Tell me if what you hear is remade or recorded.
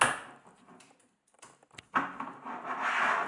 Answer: recorded